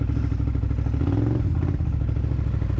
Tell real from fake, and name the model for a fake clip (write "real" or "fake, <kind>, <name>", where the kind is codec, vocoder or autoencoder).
real